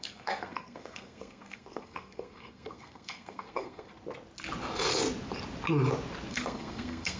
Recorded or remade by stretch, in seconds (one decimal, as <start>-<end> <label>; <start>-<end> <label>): 0.0-3.9 remade; 3.9-6.3 recorded; 6.3-7.2 remade